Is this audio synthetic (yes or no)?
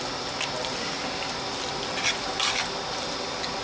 no